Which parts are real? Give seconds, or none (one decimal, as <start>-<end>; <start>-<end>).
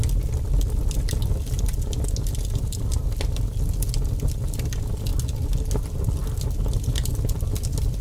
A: 0.0-8.0